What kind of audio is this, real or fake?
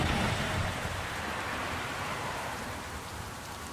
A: fake